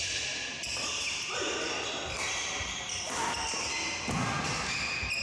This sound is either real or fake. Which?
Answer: real